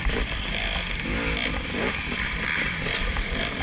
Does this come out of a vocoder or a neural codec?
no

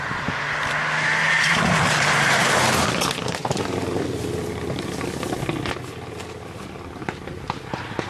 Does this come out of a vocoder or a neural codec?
no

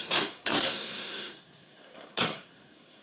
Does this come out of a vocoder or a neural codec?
yes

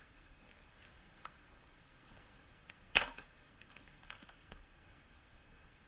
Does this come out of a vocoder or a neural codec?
yes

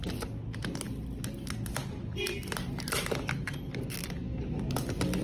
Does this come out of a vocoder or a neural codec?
no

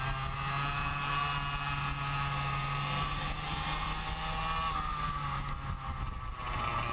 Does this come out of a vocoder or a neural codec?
no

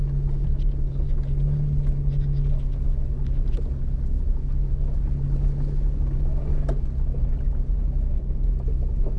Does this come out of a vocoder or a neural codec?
no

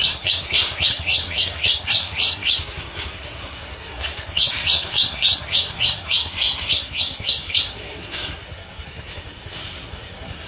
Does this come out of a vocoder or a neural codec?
yes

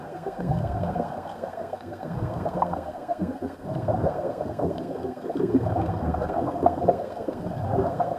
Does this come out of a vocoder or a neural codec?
yes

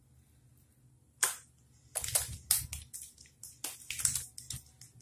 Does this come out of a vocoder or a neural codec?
no